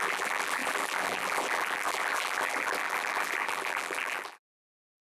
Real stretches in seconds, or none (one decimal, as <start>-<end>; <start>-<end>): none